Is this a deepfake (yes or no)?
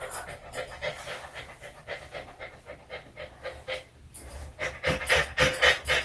no